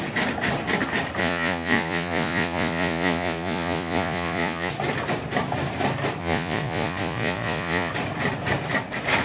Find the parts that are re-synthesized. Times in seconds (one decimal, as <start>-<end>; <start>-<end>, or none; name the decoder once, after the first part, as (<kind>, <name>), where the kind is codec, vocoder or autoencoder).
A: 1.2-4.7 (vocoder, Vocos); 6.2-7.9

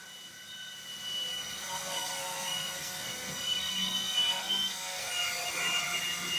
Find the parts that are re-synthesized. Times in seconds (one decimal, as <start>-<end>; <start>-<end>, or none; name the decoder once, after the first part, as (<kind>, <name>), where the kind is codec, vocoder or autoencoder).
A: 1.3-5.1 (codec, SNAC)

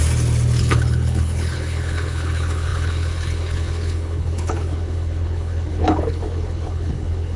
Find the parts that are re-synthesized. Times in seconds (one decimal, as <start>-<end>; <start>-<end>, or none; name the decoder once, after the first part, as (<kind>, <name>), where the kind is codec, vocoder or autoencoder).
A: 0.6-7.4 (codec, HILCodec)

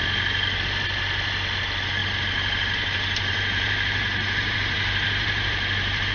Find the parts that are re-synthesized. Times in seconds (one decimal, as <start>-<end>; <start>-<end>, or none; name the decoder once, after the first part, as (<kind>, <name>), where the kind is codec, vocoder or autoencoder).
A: 2.0-6.1 (vocoder, BigVGAN v2)